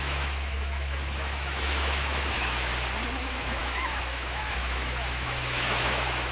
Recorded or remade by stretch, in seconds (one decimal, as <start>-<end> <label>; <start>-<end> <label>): 0.0-2.7 remade; 2.7-3.2 recorded; 3.2-6.3 remade